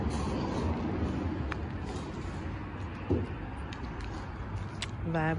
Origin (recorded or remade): recorded